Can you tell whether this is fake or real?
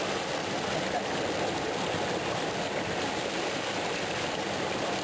real